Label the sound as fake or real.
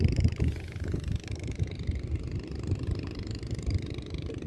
fake